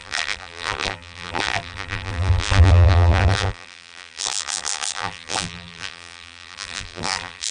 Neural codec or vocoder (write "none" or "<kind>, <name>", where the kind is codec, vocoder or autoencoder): vocoder, BigVGAN v2